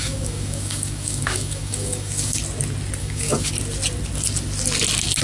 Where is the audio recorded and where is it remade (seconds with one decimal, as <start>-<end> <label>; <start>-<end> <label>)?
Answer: 0.0-2.4 remade; 2.4-3.0 recorded; 3.0-3.5 remade; 3.5-5.2 recorded